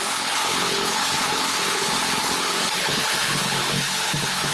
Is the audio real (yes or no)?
no